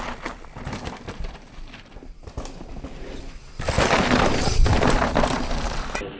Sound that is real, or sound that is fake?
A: real